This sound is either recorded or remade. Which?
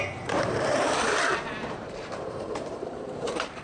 remade